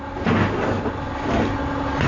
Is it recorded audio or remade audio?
recorded